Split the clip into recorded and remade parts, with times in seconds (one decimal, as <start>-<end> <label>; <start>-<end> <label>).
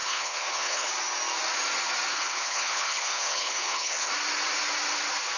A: 0.0-0.9 remade; 0.9-2.1 recorded; 2.1-4.1 remade; 4.1-5.4 recorded